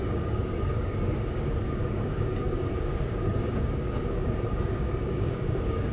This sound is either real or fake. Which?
fake